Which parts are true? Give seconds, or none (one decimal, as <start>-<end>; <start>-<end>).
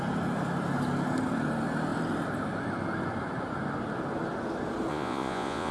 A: 0.0-4.9